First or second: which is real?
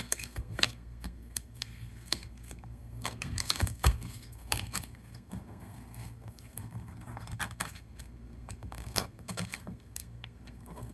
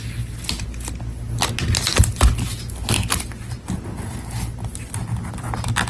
second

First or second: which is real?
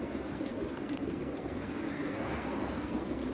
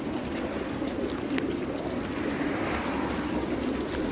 second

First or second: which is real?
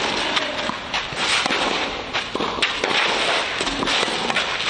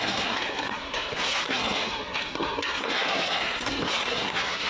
first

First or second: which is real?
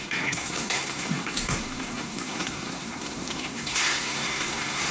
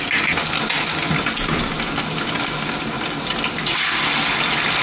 second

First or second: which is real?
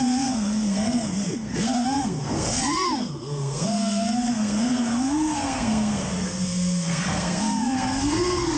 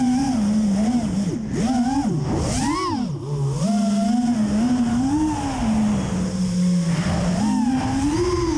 second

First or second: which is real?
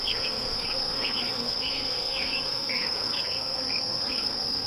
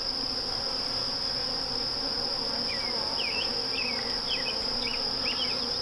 second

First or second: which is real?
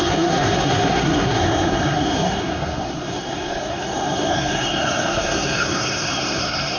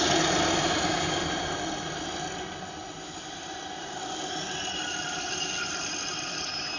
second